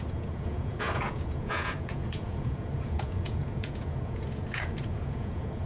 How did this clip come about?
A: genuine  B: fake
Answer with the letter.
B